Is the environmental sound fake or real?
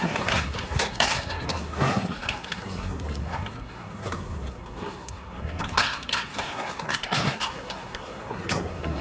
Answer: fake